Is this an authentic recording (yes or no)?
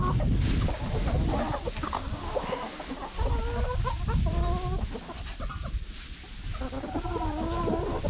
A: yes